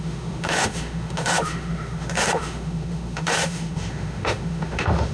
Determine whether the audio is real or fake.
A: fake